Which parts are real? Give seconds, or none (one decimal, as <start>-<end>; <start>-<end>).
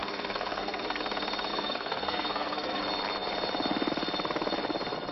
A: 1.0-1.5; 2.8-5.1